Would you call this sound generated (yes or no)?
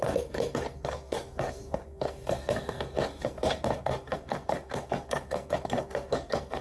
yes